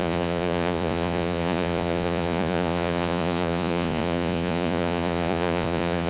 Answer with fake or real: fake